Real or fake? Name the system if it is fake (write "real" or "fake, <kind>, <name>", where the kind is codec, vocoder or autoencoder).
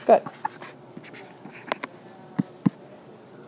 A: real